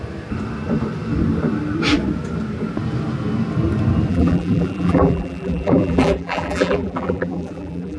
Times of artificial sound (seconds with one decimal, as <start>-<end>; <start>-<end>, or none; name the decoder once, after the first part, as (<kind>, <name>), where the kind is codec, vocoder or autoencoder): 4.1-8.0 (vocoder, BigVGAN v2)